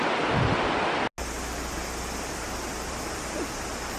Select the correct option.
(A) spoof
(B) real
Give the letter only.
B